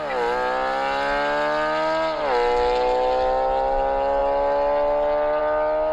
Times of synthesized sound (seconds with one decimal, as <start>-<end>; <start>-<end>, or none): none